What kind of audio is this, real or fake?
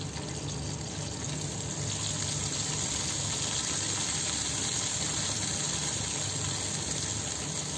real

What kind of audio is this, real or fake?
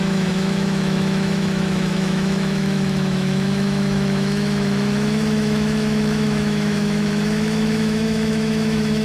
fake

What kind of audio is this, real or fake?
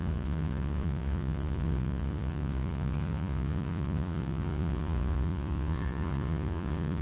fake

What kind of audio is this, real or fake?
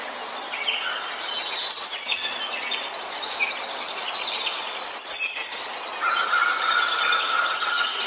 real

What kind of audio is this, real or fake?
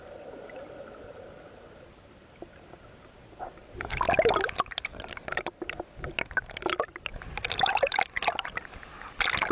real